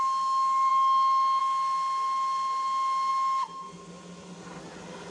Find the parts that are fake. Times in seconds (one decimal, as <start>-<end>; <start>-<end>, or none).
none